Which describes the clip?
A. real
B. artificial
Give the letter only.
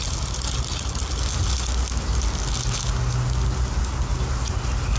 A